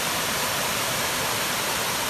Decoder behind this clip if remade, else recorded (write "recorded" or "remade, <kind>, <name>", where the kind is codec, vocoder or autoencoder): remade, vocoder, BigVGAN v2